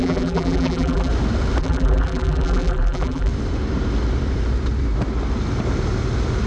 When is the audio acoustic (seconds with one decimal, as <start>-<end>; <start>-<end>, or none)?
1.1-1.6; 3.3-6.5